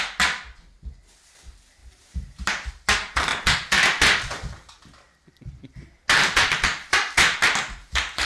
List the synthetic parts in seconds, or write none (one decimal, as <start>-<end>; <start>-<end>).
1.8-2.7; 3.3-8.3